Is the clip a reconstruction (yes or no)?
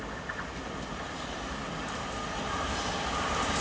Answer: no